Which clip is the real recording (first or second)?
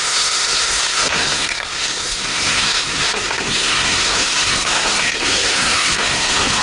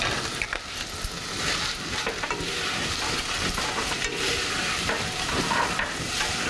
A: second